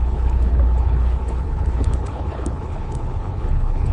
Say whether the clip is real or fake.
fake